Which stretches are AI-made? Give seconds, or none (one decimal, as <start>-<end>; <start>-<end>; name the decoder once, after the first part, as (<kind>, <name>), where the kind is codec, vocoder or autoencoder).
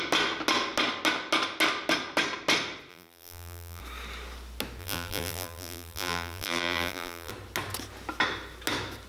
2.9-3.8 (vocoder, BigVGAN v2); 4.8-7.3